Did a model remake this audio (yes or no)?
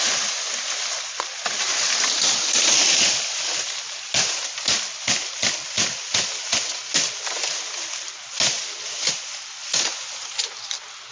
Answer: no